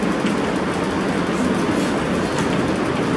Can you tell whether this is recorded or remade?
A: recorded